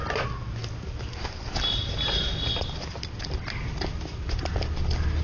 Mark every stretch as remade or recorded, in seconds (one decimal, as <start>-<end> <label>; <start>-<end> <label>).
0.0-5.2 recorded